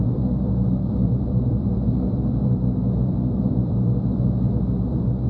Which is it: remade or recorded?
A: remade